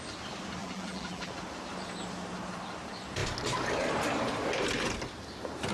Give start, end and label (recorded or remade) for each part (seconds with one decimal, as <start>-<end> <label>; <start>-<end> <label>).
0.0-0.6 recorded; 0.6-1.3 remade; 1.3-5.7 recorded